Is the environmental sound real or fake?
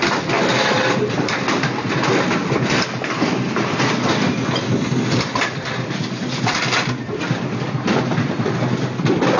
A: real